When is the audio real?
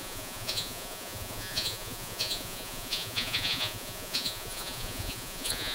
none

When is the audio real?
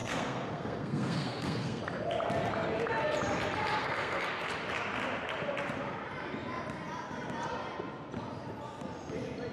1.8-3.8; 4.5-9.5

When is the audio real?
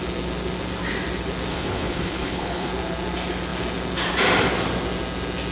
0.0-1.5; 2.7-5.5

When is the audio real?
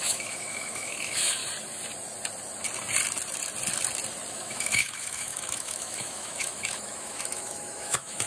1.4-4.3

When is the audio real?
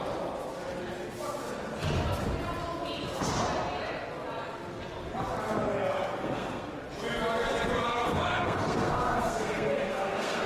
0.0-6.1; 6.7-8.0